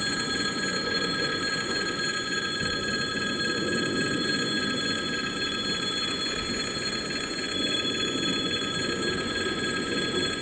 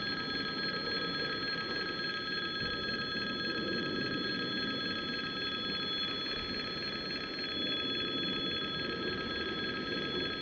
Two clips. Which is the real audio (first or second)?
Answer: second